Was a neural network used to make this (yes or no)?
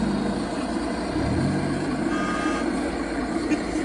no